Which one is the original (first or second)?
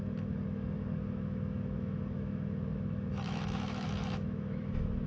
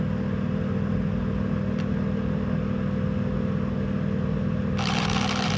second